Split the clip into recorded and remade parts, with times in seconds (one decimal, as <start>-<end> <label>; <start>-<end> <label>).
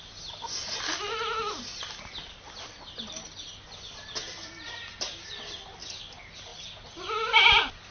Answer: 0.0-7.9 recorded